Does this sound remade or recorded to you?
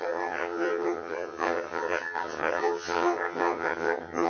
remade